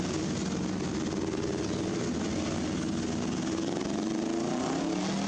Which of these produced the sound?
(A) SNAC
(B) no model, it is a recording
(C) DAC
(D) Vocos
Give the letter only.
B